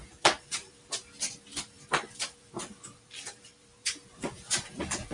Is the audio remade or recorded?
remade